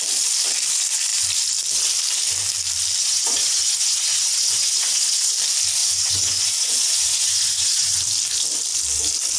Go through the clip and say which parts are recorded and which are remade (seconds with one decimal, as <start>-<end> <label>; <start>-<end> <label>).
0.0-3.0 recorded; 3.0-5.3 remade; 5.3-5.8 recorded; 5.8-8.0 remade; 8.0-9.4 recorded